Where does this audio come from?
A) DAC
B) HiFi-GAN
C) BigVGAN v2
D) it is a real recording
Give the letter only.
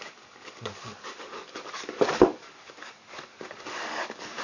A